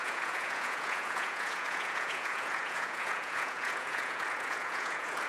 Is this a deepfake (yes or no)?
yes